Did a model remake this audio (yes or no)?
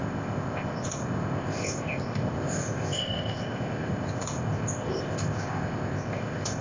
yes